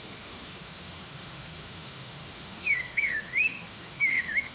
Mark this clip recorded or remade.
remade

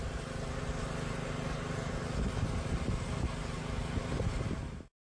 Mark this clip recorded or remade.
remade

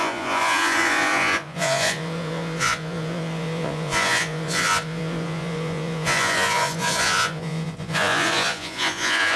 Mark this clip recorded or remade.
remade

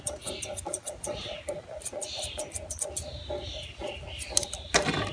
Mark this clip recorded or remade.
recorded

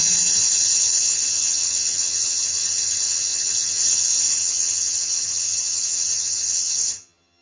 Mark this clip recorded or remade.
remade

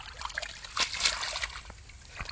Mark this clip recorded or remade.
recorded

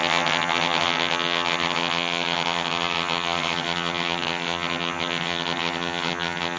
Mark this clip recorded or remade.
remade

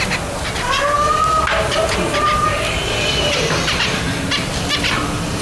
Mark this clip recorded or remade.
remade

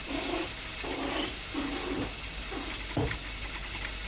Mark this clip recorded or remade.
recorded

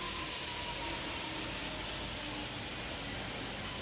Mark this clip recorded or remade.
recorded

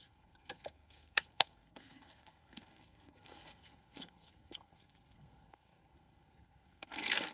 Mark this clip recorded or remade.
remade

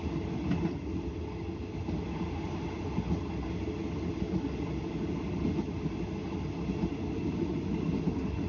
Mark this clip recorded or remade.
recorded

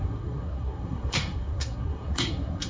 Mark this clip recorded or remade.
remade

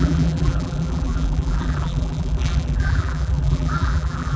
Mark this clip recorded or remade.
remade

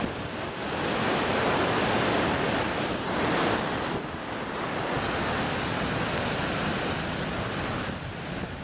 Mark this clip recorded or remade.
recorded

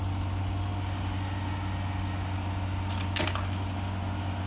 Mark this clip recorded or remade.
recorded